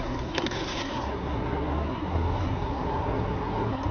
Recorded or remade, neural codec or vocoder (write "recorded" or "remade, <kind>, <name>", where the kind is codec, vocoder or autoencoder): remade, codec, SNAC